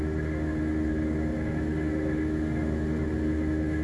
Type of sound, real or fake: fake